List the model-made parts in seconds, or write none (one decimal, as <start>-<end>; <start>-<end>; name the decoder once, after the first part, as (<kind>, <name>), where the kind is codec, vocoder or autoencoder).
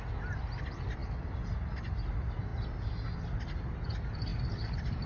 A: none